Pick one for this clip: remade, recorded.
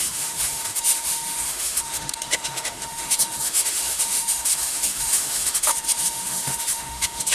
remade